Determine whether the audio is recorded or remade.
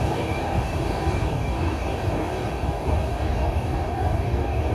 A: remade